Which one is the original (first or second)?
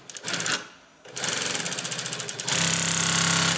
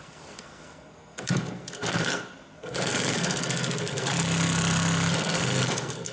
first